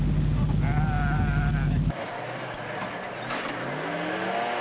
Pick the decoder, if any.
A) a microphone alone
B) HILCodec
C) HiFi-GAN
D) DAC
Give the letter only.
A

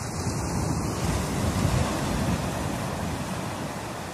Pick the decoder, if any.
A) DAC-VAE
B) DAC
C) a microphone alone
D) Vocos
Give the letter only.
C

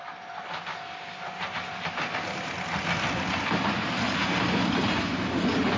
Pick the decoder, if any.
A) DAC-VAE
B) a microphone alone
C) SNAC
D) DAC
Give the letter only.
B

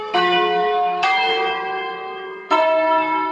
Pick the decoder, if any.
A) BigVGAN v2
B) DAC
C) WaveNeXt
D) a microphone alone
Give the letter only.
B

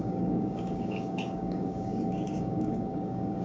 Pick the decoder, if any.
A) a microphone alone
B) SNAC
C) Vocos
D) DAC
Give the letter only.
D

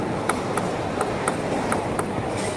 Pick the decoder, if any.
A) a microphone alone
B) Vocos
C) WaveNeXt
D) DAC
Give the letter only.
A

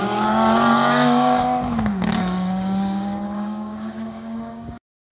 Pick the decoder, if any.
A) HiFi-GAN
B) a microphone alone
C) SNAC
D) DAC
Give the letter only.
D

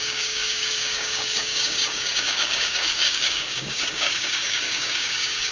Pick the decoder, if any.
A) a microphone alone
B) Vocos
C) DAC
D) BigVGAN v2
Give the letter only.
C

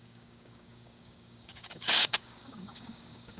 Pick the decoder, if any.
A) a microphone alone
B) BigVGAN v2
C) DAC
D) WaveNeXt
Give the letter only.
C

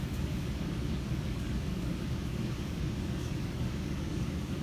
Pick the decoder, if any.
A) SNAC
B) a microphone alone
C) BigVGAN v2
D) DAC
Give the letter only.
D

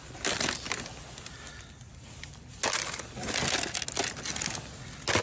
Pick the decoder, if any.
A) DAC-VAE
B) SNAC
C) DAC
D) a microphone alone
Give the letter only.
D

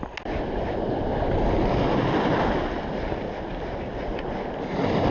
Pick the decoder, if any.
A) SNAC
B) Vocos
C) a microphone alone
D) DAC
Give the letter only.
C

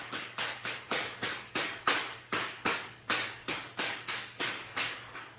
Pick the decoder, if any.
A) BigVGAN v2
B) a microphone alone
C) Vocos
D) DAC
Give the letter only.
D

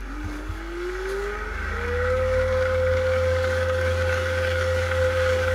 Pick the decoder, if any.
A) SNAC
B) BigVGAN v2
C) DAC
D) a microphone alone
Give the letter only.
C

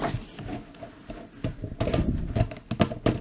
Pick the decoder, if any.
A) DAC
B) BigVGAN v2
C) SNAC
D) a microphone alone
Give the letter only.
D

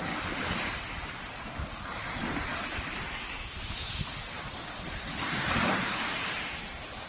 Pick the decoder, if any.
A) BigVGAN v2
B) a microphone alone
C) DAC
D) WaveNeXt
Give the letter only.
B